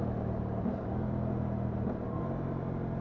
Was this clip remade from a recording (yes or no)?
no